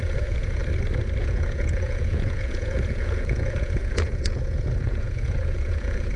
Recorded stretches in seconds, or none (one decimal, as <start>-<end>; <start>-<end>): 0.6-1.2